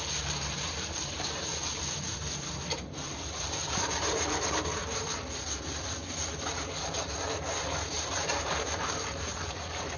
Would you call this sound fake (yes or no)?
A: yes